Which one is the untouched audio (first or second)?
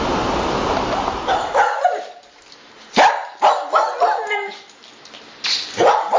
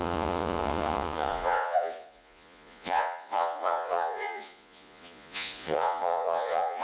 first